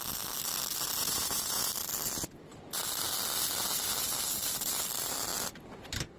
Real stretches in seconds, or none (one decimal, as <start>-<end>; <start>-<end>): 0.0-1.0; 1.7-6.2